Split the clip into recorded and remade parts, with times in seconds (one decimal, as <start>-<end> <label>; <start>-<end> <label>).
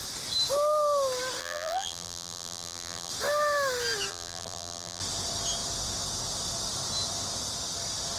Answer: 0.0-1.4 recorded; 1.4-3.1 remade; 3.1-4.1 recorded; 4.1-5.0 remade; 5.0-8.2 recorded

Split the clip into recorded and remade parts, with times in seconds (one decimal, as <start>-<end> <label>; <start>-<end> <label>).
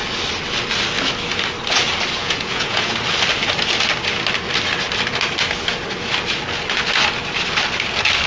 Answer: 0.0-2.2 recorded; 2.2-2.9 remade; 2.9-8.3 recorded